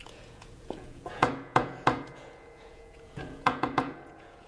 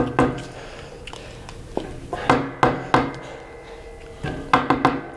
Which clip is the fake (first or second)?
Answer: first